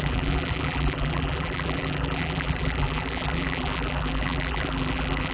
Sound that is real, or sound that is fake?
fake